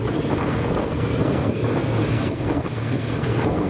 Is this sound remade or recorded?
remade